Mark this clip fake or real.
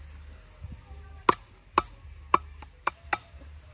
real